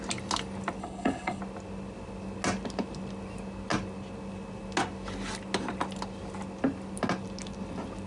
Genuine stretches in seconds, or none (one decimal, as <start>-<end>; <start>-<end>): 0.0-0.8; 1.4-8.1